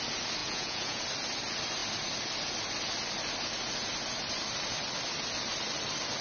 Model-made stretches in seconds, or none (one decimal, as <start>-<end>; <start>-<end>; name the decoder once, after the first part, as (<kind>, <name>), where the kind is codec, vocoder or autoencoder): 0.4-1.0 (vocoder, Vocos)